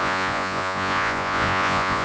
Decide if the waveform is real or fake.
fake